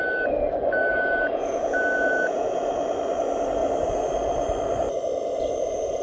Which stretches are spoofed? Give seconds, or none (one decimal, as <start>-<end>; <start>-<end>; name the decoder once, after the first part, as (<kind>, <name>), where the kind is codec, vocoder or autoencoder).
0.9-2.7 (vocoder, Vocos)